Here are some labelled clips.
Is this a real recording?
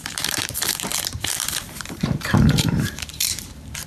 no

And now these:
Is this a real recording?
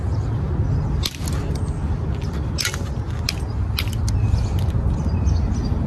yes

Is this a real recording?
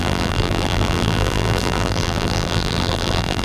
no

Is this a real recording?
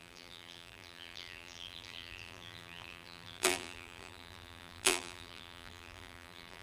no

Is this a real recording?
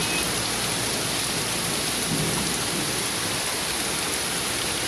yes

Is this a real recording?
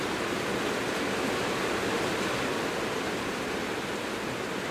no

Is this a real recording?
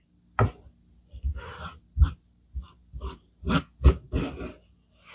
yes